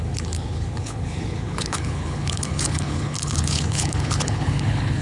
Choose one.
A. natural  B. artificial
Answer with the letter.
B